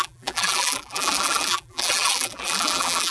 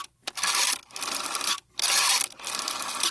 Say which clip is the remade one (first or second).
first